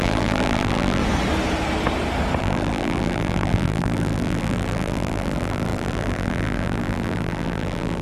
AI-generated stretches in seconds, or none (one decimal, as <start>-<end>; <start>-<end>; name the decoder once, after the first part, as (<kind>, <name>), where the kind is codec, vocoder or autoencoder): 0.0-1.0 (vocoder, BigVGAN v2); 2.4-8.0